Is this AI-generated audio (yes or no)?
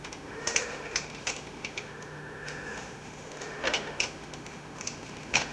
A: yes